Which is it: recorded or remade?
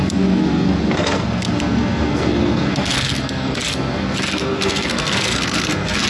remade